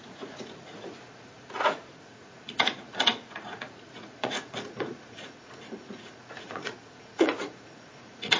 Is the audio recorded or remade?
remade